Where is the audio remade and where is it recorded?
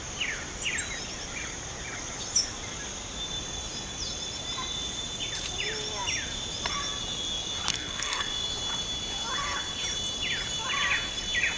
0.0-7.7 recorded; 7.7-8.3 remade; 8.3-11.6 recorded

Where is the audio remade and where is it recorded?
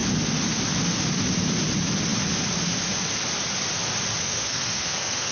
0.0-4.2 recorded; 4.2-5.3 remade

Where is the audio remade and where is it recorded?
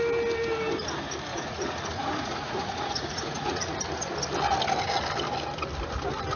0.0-1.3 recorded; 1.3-3.8 remade; 3.8-6.4 recorded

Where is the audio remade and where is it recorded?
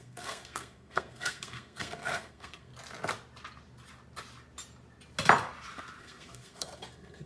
0.0-2.7 remade; 2.7-6.0 recorded; 6.0-7.3 remade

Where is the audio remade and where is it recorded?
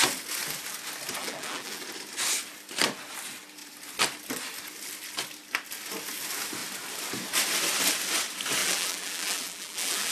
0.0-1.2 recorded; 1.2-1.8 remade; 1.8-8.6 recorded; 8.6-10.1 remade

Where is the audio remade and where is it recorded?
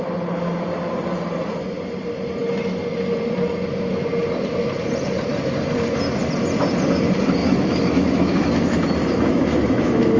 0.0-7.4 recorded; 7.4-10.2 remade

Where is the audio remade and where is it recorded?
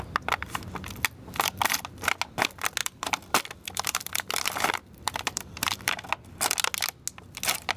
0.0-2.8 recorded; 2.8-6.0 remade; 6.0-7.8 recorded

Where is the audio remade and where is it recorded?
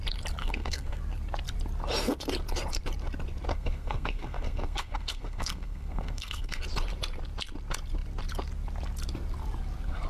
0.0-0.4 recorded; 0.4-1.0 remade; 1.0-3.5 recorded; 3.5-6.6 remade; 6.6-10.1 recorded